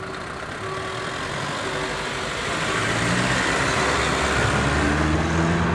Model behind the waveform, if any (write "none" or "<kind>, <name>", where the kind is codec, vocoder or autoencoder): none